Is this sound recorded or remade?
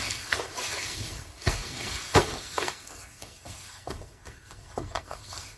remade